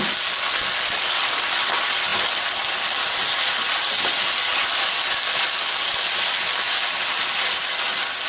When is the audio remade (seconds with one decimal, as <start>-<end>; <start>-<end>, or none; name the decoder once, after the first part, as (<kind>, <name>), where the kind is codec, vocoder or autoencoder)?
none